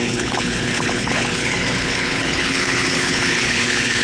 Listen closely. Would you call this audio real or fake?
fake